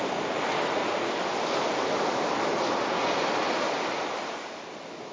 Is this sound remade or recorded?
recorded